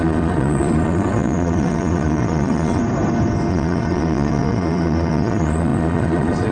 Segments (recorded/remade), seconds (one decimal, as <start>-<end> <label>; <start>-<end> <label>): 0.0-2.8 remade; 2.8-3.5 recorded; 3.5-6.5 remade